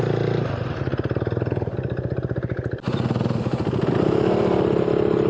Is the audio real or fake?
real